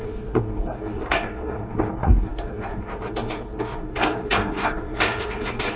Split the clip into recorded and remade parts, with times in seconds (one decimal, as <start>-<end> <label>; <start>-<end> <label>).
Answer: 0.0-5.8 remade